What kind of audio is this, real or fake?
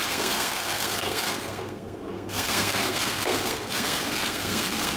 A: fake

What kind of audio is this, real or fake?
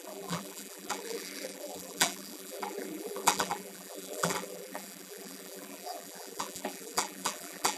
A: fake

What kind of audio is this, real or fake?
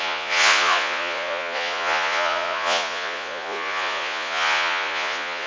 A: fake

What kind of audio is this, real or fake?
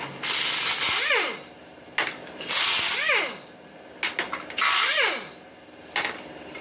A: real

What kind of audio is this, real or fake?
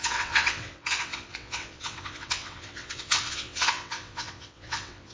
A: fake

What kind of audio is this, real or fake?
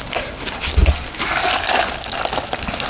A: real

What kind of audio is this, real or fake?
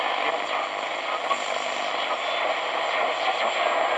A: real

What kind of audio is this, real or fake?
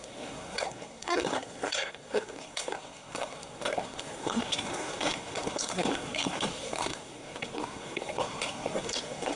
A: fake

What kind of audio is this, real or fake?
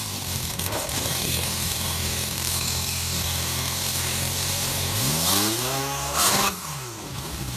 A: fake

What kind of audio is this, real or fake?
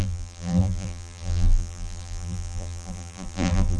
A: fake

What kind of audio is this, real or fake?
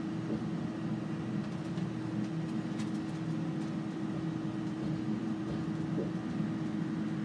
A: real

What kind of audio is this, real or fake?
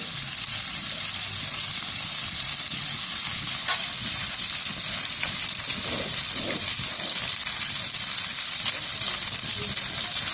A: real